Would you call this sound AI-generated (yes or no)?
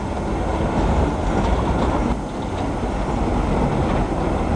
no